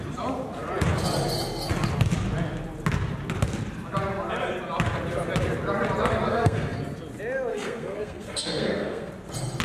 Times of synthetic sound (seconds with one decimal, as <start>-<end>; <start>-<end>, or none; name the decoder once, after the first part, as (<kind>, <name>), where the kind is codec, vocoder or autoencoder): 6.3-6.8 (codec, SNAC); 7.5-9.1